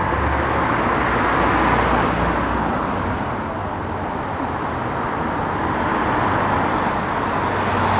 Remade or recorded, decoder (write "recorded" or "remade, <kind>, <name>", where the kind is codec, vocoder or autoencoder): recorded